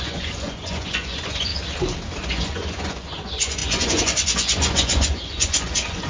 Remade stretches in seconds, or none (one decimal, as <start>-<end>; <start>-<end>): 0.0-1.5; 2.2-6.1